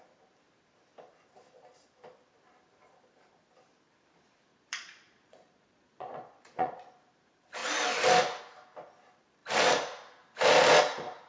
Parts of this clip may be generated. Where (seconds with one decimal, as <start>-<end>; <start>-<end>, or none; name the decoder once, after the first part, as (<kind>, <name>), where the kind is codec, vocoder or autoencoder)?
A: 4.5-6.9 (vocoder, Vocos)